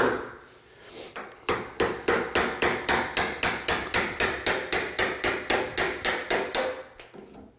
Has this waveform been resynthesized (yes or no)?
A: no